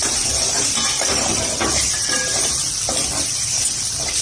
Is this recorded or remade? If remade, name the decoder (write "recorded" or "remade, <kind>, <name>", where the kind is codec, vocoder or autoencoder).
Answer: recorded